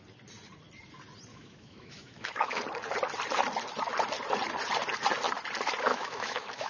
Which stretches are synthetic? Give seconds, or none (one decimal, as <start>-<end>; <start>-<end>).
1.3-2.6; 5.9-6.7